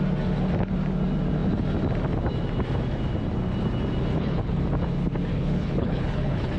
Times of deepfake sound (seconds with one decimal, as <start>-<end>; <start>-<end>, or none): 4.1-4.6; 5.3-6.6